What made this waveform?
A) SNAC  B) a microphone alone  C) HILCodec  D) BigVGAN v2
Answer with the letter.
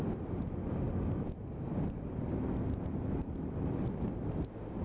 B